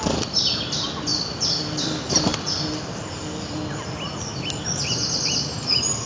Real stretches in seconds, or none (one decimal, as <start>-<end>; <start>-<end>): 0.0-6.1